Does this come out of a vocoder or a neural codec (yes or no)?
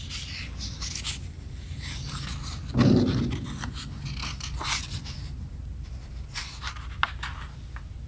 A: no